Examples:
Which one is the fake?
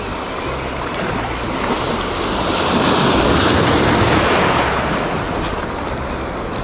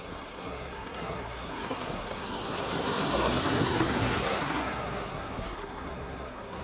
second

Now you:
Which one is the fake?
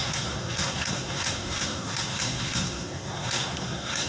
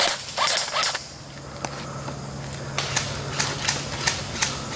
first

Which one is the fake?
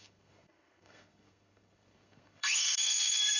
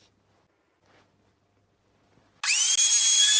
first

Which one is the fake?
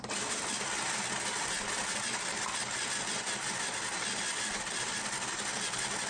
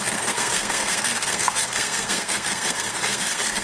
second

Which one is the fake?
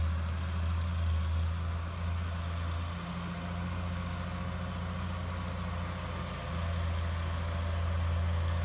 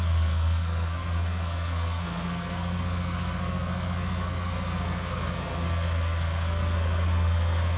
second